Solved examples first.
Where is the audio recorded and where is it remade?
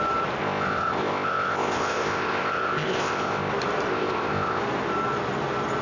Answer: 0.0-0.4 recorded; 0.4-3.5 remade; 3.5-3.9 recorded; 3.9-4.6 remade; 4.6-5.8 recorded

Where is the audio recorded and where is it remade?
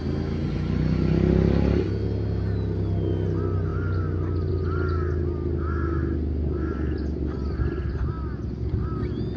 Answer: 0.0-9.4 recorded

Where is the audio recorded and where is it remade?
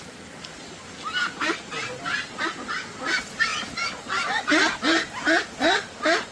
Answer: 0.0-6.3 recorded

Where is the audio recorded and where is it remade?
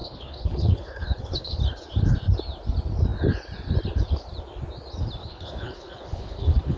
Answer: 0.0-1.6 remade; 1.6-5.2 recorded; 5.2-6.8 remade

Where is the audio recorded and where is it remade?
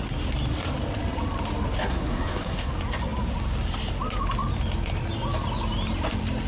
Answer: 0.0-1.8 recorded; 1.8-2.7 remade; 2.7-6.5 recorded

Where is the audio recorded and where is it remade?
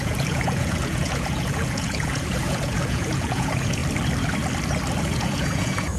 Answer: 0.0-3.8 remade; 3.8-5.0 recorded; 5.0-6.0 remade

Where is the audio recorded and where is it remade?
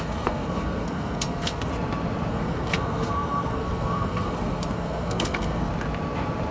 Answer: 0.0-1.7 remade; 1.7-2.3 recorded; 2.3-5.7 remade; 5.7-6.5 recorded